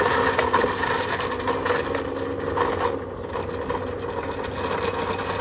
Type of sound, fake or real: real